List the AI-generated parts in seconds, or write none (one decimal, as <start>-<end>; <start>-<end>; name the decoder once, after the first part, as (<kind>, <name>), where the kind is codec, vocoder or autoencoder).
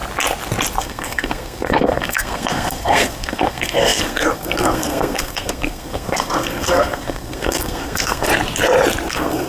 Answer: 0.8-8.3 (codec, SNAC); 9.1-9.5